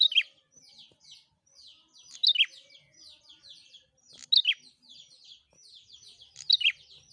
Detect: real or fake real